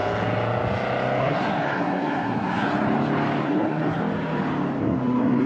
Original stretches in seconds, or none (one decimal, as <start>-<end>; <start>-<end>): 0.0-1.2; 2.7-3.4; 4.0-4.8